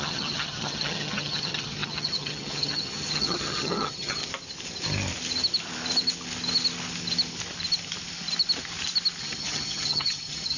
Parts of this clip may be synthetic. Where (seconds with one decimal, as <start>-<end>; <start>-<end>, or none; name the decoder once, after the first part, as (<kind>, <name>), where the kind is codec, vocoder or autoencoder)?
0.0-4.2 (vocoder, HiFi-GAN); 9.2-10.6